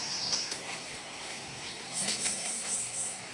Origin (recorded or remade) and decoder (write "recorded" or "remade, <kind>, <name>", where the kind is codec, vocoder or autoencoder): remade, codec, SNAC